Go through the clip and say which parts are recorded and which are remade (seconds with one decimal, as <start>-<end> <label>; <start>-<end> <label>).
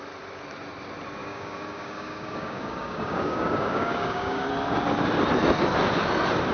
0.0-1.2 recorded; 1.2-4.5 remade; 4.5-6.5 recorded